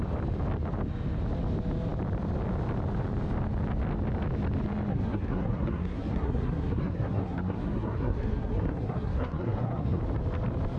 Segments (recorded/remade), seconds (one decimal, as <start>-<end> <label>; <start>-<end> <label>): 0.0-4.9 recorded; 4.9-10.0 remade; 10.0-10.8 recorded